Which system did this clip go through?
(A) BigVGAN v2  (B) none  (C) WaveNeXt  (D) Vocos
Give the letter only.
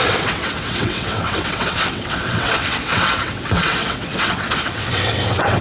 C